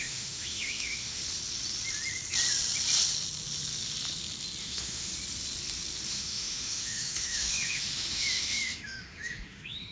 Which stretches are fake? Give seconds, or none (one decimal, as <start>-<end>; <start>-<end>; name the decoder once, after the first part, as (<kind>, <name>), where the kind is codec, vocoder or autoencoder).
0.0-1.2 (autoencoder, DAC-VAE); 4.6-5.1; 6.1-9.9